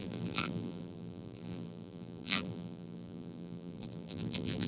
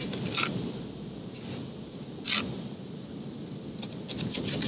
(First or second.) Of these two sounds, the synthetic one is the first